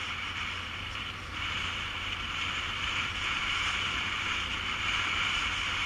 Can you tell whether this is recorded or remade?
remade